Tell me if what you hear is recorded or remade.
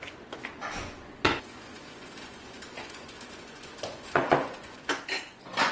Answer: remade